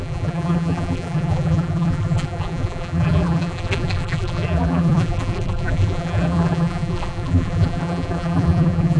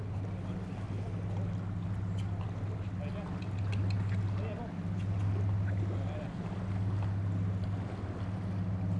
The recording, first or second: second